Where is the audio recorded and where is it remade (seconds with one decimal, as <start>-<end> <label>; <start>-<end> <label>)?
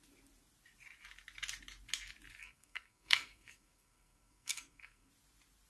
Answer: 0.0-2.4 recorded; 2.4-5.1 remade; 5.1-5.7 recorded